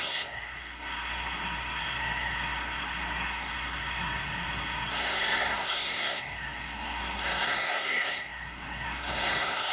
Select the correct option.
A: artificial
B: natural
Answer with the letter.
A